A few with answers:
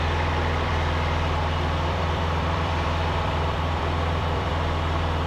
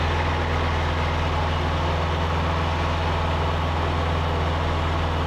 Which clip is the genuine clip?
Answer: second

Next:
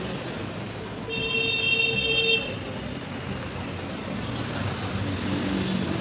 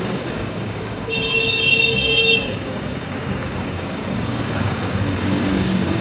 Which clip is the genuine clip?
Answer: first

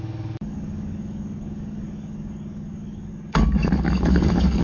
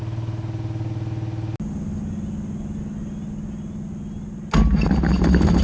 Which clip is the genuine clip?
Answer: second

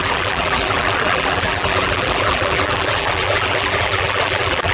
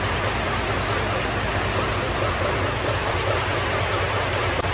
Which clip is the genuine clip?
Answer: second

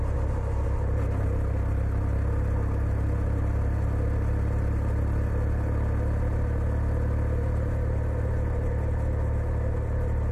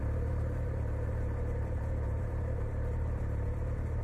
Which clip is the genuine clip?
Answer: first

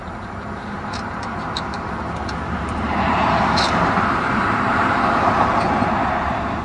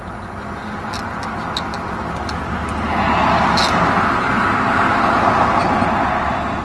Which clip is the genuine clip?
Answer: second